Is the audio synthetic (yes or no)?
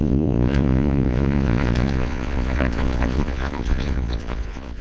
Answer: yes